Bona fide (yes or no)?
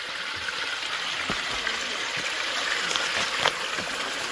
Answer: yes